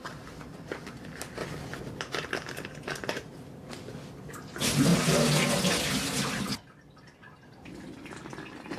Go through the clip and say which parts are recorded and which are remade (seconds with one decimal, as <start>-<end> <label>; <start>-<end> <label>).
0.0-8.8 recorded